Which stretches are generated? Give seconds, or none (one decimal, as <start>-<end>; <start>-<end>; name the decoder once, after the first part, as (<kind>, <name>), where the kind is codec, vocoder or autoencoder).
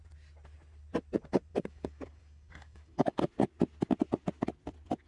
1.5-3.2 (codec, DAC)